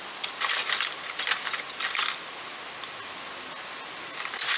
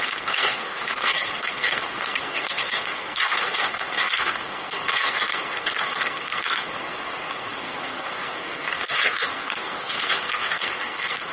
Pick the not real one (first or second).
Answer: second